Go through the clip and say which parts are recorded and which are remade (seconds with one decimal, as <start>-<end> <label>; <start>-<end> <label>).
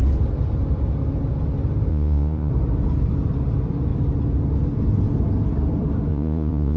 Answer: 0.0-1.9 recorded; 1.9-2.5 remade; 2.5-6.1 recorded; 6.1-6.8 remade